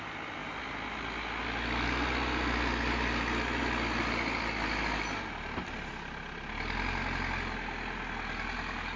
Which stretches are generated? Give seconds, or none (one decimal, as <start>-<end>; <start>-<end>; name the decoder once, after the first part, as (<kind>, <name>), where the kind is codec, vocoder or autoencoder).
none